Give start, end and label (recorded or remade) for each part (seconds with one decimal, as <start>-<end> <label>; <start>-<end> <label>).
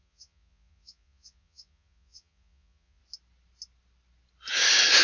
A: 0.0-3.0 remade; 3.0-5.0 recorded